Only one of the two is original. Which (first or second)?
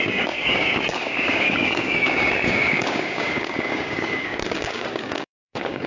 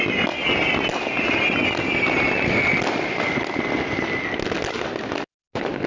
second